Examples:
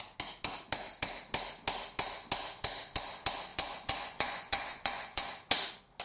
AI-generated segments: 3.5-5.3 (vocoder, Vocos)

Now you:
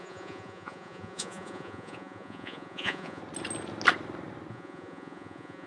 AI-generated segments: 0.0-3.2 (vocoder, Vocos); 4.5-5.7